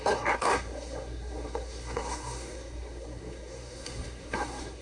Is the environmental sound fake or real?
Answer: fake